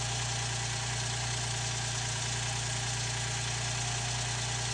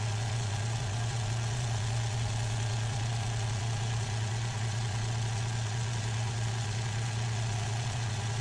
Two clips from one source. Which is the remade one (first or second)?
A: second